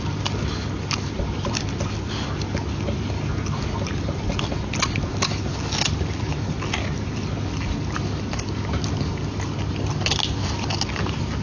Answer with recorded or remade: recorded